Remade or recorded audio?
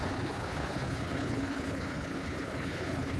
remade